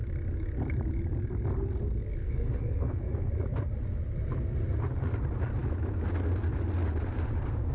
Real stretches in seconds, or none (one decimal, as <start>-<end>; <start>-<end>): 0.0-2.2; 3.3-7.7